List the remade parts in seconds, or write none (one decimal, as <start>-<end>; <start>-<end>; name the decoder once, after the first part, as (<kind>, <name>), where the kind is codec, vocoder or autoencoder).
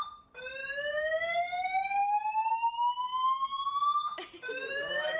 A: 0.6-1.2 (autoencoder, DAC-VAE); 2.0-5.2